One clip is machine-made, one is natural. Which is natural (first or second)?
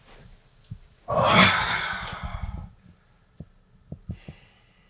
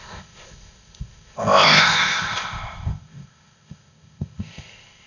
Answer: first